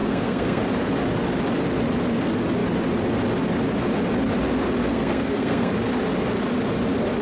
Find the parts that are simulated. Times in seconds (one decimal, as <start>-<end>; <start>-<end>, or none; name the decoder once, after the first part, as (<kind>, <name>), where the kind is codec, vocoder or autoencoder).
0.0-0.6 (codec, SNAC); 4.9-5.7